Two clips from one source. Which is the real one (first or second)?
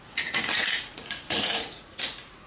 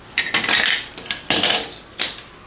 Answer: second